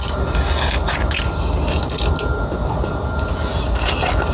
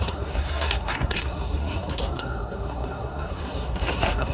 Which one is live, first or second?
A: first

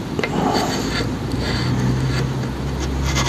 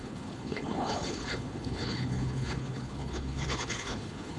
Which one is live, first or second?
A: first